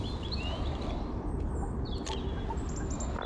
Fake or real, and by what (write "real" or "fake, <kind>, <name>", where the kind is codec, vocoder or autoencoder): real